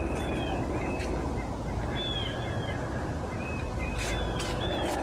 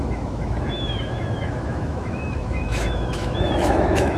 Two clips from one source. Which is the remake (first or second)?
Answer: second